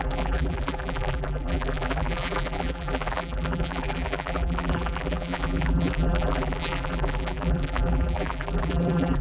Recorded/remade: remade